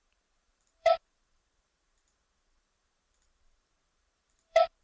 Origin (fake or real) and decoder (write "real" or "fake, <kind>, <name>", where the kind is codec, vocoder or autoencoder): fake, vocoder, BigVGAN v2